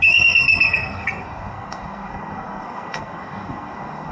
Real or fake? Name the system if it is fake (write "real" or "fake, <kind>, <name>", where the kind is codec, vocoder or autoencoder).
fake, codec, SNAC